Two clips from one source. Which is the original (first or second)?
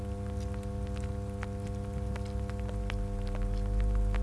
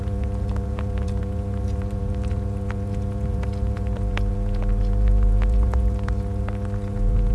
first